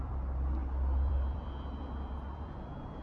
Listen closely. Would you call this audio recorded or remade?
remade